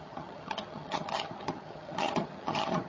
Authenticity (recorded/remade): remade